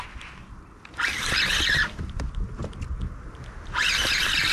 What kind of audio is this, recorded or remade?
recorded